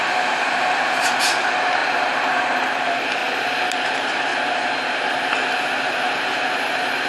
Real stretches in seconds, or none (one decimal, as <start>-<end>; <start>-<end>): 3.2-3.8; 4.3-5.6